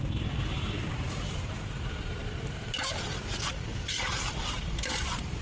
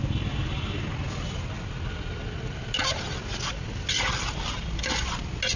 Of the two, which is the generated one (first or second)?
first